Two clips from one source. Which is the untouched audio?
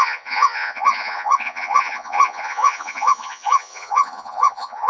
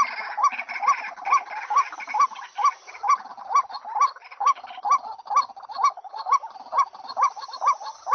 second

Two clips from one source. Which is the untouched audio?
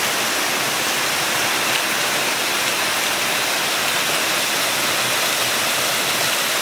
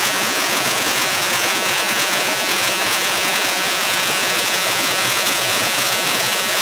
first